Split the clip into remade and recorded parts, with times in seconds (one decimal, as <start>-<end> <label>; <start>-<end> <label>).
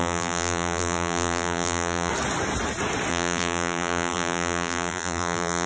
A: 0.0-2.1 remade; 2.1-3.1 recorded; 3.1-5.7 remade